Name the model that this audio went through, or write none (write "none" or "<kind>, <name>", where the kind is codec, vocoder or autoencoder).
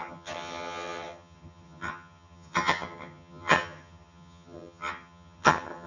vocoder, HiFi-GAN